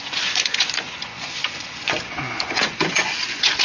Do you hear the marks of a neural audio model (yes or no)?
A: yes